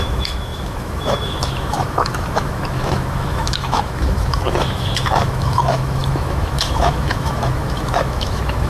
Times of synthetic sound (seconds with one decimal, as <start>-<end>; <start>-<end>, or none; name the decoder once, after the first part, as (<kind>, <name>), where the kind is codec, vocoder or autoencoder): 0.0-8.7 (autoencoder, DAC-VAE)